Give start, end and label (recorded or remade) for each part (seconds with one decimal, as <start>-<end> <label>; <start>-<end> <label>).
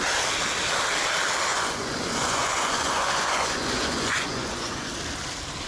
0.0-1.5 recorded; 1.5-4.9 remade; 4.9-5.7 recorded